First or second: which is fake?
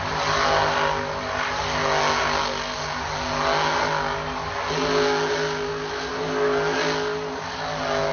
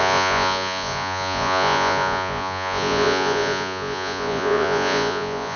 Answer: second